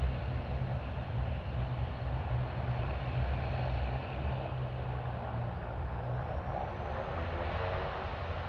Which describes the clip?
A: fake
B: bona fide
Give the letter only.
B